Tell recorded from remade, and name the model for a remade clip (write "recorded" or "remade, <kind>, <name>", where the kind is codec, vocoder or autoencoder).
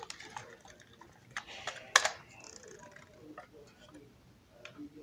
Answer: recorded